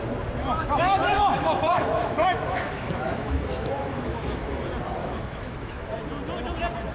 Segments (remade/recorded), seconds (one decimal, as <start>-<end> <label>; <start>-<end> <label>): 0.0-0.5 recorded; 0.5-4.6 remade; 4.6-5.0 recorded; 5.0-5.9 remade; 5.9-6.9 recorded